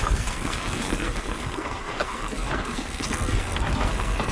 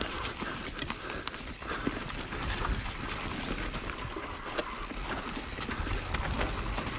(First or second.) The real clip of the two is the second